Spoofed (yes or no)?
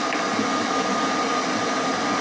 no